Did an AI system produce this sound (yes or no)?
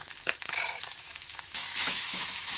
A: yes